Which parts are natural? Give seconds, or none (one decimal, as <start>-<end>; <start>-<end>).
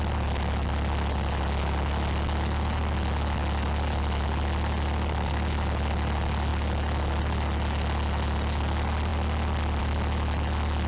0.0-10.9